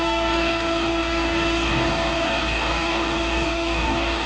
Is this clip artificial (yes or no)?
yes